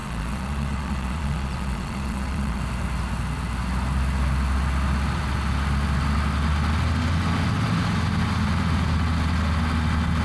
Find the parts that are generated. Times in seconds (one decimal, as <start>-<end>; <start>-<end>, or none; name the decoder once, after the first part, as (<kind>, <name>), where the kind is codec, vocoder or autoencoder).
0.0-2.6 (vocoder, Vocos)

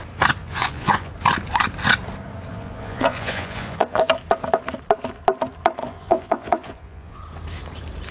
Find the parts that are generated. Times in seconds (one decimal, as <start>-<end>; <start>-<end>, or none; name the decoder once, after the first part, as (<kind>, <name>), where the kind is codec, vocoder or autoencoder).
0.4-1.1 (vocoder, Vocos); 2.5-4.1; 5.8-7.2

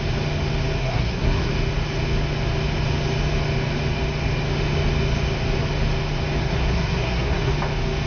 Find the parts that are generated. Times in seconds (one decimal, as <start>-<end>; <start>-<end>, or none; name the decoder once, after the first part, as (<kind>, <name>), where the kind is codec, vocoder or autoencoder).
0.8-1.5 (codec, SNAC); 6.4-7.5

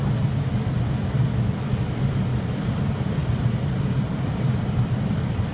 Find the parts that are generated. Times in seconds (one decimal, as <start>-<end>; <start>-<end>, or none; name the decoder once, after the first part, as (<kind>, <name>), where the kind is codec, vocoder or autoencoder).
2.3-2.8 (vocoder, BigVGAN v2); 3.2-5.5

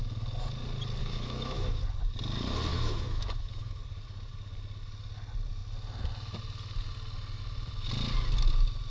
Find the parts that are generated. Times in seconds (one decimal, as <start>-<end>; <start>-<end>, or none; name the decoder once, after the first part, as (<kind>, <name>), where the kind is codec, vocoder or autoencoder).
1.0-1.8 (autoencoder, DAC-VAE); 2.7-3.8

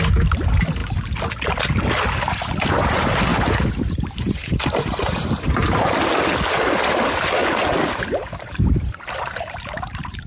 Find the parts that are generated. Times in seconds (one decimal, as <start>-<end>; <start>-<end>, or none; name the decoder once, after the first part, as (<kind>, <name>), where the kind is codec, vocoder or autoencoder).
3.3-5.9 (vocoder, BigVGAN v2); 7.4-10.3

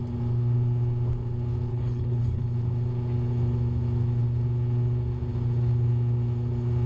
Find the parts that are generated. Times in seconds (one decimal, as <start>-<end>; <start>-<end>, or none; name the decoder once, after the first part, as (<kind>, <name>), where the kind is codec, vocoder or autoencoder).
1.7-2.4 (codec, HILCodec)